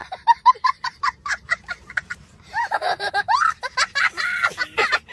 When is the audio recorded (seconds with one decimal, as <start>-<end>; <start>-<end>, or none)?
3.1-5.1